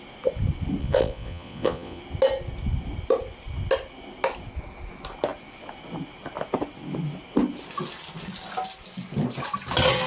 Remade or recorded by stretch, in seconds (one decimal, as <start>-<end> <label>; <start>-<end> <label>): 0.0-0.8 recorded; 0.8-2.0 remade; 2.0-10.1 recorded